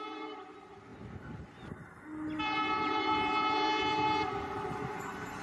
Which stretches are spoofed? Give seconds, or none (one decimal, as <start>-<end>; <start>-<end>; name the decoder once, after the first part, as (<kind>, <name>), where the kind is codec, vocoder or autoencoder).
0.0-0.9 (vocoder, BigVGAN v2); 2.4-5.4